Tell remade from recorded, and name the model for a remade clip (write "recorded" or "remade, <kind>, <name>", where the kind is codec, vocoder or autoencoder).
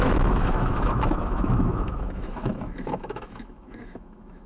remade, autoencoder, DAC-VAE